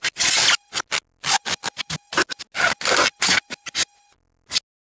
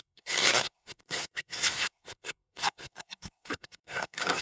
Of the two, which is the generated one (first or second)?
second